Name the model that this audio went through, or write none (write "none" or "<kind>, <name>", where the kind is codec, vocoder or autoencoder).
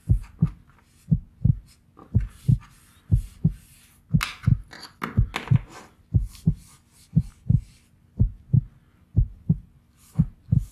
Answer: none